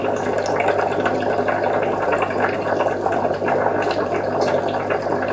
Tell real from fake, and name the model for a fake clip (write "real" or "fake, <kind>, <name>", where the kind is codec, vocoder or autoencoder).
real